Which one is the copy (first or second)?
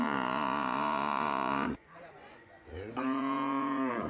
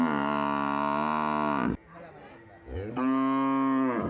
first